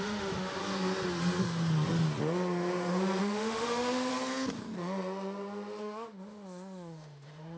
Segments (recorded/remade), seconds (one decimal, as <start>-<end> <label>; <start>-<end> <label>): 0.0-0.6 remade; 0.6-3.2 recorded; 3.2-4.1 remade; 4.1-5.8 recorded; 5.8-7.6 remade